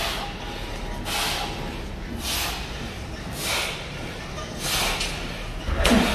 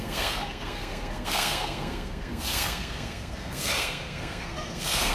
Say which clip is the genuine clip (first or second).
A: first